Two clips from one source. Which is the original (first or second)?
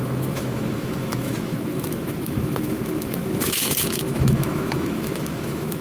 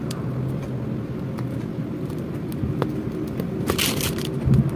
second